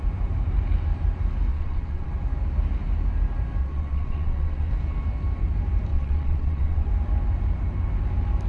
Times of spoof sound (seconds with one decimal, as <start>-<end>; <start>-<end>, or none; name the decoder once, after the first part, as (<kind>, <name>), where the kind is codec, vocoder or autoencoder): 1.5-2.1 (vocoder, WaveNeXt); 3.6-4.7; 5.9-6.9